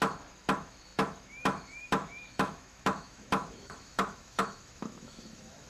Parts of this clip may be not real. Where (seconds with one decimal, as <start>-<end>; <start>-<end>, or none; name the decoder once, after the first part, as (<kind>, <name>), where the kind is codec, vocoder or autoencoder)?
0.0-5.7 (autoencoder, DAC-VAE)